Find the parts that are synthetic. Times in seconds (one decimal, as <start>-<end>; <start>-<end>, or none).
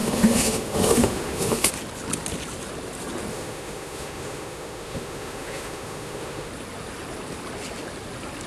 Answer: 0.0-1.7; 3.3-6.5